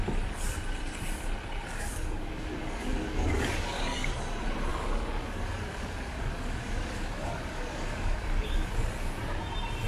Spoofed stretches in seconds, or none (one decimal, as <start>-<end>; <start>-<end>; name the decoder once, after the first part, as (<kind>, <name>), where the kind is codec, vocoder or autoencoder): 1.7-4.1 (codec, DAC); 4.7-8.7